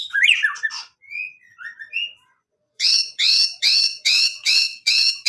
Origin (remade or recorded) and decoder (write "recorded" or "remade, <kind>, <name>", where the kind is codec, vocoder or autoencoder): remade, vocoder, Vocos